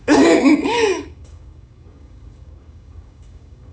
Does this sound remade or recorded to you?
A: remade